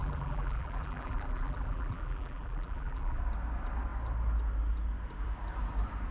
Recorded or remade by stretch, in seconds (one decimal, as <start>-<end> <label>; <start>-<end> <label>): 0.0-3.2 remade; 3.2-6.1 recorded